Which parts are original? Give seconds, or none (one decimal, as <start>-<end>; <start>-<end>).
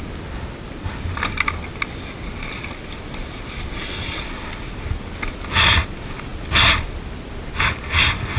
0.0-8.4